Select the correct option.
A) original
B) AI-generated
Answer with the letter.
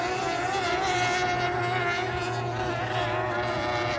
A